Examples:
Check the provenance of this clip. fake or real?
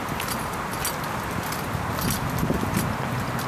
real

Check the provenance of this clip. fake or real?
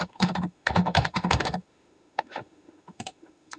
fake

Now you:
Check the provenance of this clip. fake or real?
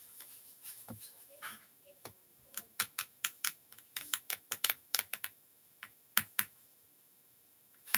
fake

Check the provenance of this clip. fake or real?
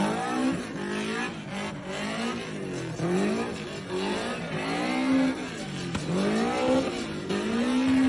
real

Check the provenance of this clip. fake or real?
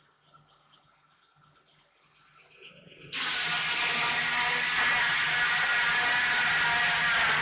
real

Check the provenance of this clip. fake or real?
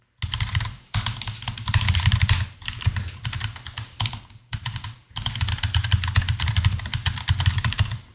real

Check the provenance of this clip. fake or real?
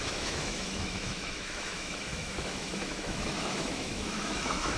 fake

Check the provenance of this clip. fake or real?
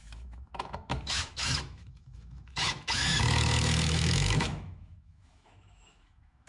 fake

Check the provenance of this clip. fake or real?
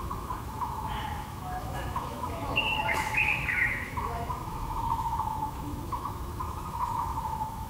fake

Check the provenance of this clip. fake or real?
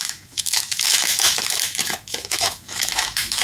fake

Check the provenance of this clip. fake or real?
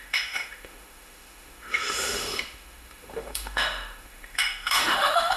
fake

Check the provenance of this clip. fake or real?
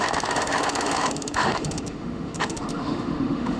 fake